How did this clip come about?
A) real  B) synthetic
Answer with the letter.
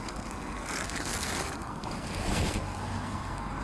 B